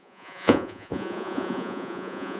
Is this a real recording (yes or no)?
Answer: no